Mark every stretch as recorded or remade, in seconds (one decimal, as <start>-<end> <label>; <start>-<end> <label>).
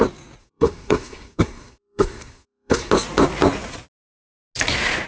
0.0-0.4 recorded; 0.4-2.9 remade; 2.9-5.1 recorded